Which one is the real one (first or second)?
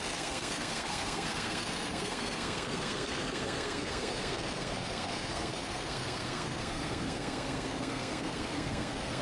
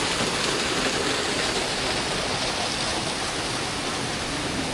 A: second